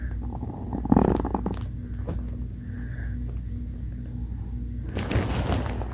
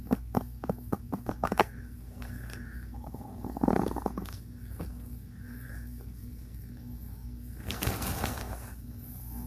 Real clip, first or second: first